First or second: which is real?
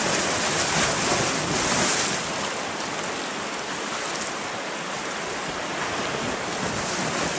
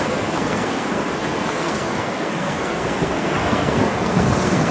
first